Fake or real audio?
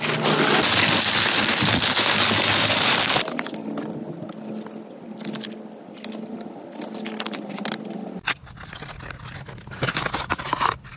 real